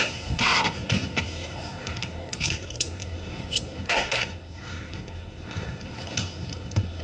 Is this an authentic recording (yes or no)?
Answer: no